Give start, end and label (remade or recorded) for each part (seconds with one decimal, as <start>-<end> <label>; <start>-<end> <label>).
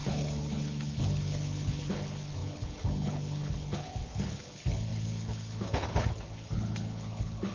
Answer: 0.0-7.5 remade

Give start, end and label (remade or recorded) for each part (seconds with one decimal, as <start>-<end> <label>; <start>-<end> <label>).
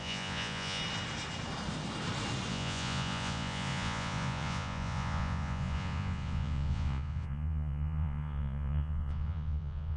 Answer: 0.0-0.8 remade; 0.8-2.5 recorded; 2.5-10.0 remade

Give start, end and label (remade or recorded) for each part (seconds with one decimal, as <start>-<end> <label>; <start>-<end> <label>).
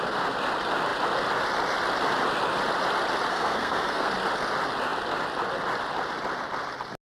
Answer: 0.0-3.3 recorded; 3.3-4.1 remade; 4.1-7.1 recorded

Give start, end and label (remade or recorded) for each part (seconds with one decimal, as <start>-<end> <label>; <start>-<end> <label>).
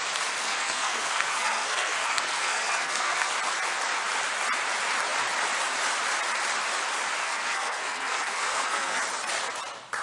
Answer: 0.0-0.4 recorded; 0.4-3.3 remade; 3.3-7.2 recorded; 7.2-9.0 remade; 9.0-10.0 recorded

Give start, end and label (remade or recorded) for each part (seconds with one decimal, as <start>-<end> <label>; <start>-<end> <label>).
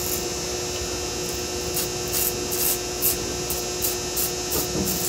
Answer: 0.0-5.1 recorded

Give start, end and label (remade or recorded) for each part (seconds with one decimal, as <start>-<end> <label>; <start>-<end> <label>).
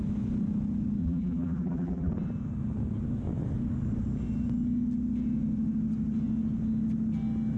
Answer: 0.0-1.0 recorded; 1.0-2.1 remade; 2.1-7.6 recorded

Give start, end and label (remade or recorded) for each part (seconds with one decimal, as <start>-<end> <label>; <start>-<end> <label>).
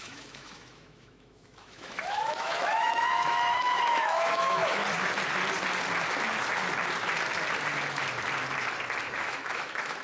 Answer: 0.0-4.8 remade; 4.8-9.1 recorded; 9.1-10.0 remade